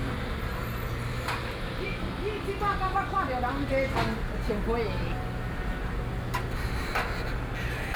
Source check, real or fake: real